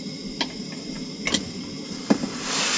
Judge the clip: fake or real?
real